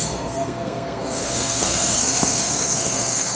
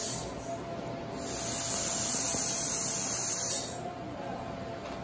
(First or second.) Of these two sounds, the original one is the second